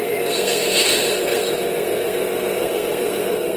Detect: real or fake fake